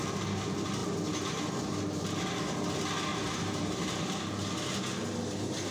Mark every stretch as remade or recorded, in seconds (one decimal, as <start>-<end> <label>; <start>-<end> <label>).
0.0-3.1 recorded; 3.1-4.2 remade; 4.2-5.7 recorded